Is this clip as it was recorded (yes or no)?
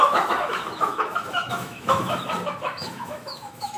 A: no